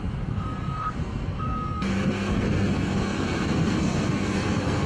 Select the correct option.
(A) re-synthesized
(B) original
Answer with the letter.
A